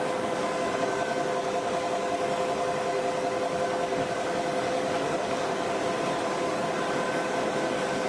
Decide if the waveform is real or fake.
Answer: fake